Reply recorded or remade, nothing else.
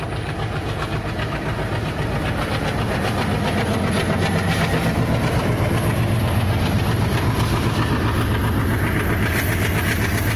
recorded